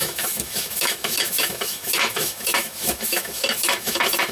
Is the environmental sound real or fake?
fake